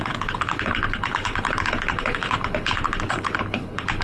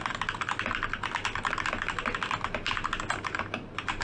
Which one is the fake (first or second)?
first